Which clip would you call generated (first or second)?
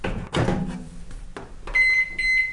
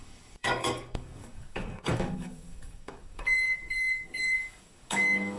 second